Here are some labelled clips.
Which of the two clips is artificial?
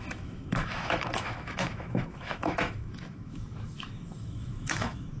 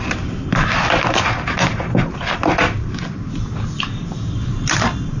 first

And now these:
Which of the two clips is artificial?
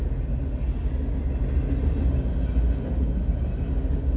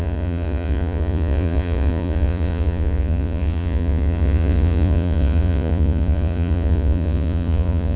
second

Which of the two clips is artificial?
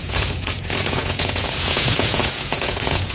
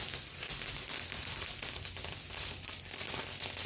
first